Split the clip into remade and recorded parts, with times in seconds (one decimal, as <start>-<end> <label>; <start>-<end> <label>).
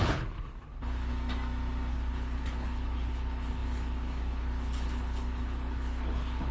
0.0-1.1 remade; 1.1-1.9 recorded; 1.9-6.5 remade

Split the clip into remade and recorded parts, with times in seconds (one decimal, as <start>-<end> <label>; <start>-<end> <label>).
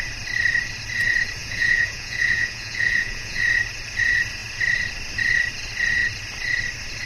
0.0-1.4 recorded; 1.4-3.4 remade; 3.4-7.1 recorded